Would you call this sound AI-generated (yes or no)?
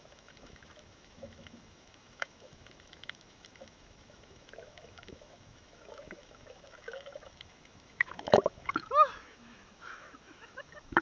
yes